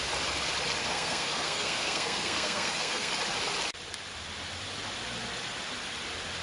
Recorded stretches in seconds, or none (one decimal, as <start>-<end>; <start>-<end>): 0.0-0.8; 3.1-6.4